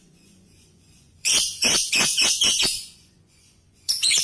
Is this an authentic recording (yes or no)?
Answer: no